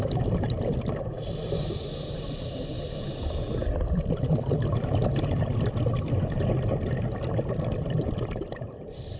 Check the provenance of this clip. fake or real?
real